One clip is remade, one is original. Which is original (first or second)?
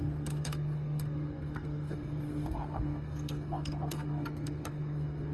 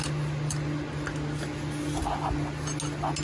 second